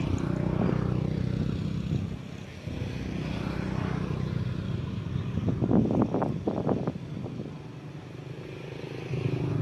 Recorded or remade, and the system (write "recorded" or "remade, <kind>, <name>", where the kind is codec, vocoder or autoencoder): recorded